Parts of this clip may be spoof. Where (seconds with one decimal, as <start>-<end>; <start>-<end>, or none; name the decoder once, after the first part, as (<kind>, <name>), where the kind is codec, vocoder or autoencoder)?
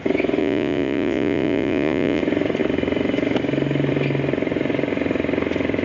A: 0.4-2.2 (vocoder, Vocos)